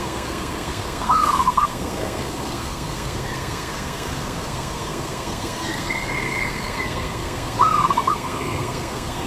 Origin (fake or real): fake